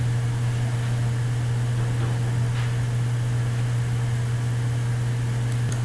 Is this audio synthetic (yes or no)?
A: no